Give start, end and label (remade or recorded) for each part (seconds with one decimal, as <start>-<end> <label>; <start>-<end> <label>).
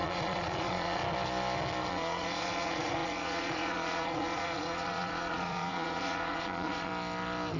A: 0.0-1.0 remade; 1.0-1.9 recorded; 1.9-6.9 remade; 6.9-7.6 recorded